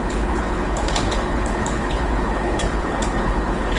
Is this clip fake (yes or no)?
yes